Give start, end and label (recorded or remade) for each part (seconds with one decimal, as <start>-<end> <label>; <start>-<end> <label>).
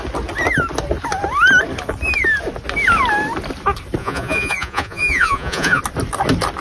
0.0-4.0 recorded; 4.0-5.8 remade; 5.8-6.6 recorded